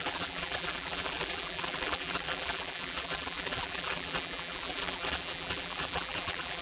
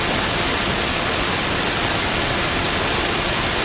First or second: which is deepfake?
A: first